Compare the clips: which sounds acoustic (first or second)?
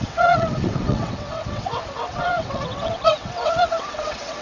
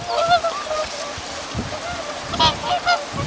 second